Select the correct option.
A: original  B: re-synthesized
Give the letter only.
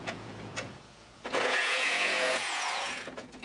B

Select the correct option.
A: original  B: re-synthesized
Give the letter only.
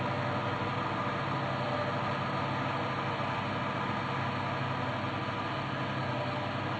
A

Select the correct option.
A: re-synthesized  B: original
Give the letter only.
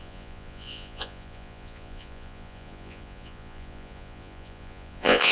A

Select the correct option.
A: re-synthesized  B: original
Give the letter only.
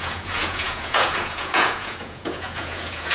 A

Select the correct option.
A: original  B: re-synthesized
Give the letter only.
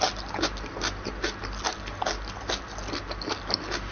A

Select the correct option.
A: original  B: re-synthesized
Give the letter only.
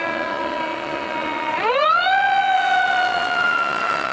B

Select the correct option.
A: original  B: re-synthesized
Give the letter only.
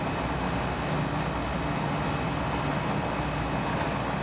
A